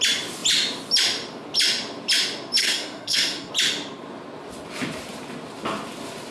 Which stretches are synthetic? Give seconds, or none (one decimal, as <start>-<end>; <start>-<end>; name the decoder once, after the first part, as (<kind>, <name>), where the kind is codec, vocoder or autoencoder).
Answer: 2.6-3.5 (codec, SNAC)